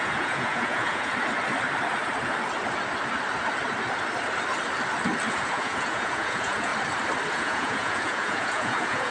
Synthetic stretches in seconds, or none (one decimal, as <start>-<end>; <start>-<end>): 0.0-1.1; 5.3-6.7; 7.3-9.1